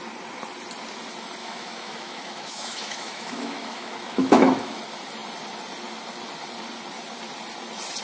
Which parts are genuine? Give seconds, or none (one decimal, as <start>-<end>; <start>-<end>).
0.0-1.4; 4.8-8.0